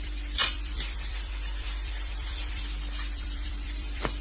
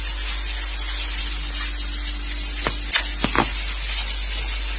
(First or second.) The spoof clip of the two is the first